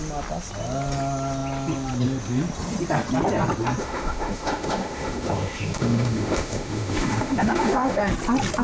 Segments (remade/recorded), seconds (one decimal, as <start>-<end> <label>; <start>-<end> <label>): 0.0-3.8 recorded; 3.8-8.0 remade; 8.0-8.6 recorded